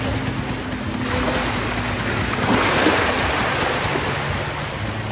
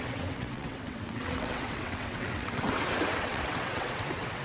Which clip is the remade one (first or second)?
second